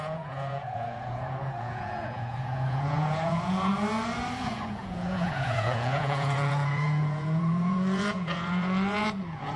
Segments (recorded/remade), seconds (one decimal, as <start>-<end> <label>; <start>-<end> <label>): 0.0-3.7 remade; 3.7-4.4 recorded; 4.4-9.6 remade